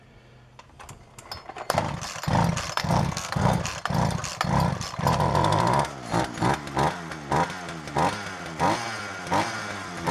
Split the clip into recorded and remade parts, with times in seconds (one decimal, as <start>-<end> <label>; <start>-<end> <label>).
0.0-2.8 recorded; 2.8-3.6 remade; 3.6-10.1 recorded